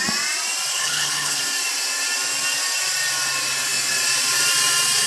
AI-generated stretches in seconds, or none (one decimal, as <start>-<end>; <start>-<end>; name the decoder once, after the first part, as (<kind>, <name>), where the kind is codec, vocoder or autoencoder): 0.7-1.4 (codec, HILCodec)